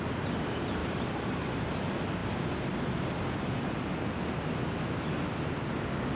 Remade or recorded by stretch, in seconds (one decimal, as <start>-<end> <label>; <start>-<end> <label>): 0.0-6.2 recorded